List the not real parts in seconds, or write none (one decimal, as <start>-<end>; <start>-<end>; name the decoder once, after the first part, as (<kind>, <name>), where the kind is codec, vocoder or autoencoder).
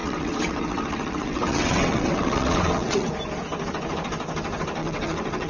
0.0-3.1 (vocoder, WaveNeXt); 4.8-5.5